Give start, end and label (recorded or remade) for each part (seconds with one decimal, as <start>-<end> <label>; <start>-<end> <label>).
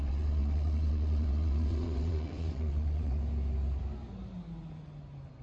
0.0-3.2 remade; 3.2-5.4 recorded